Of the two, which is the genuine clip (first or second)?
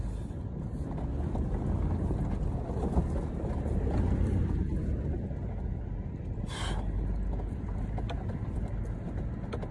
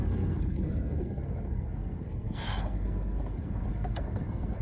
first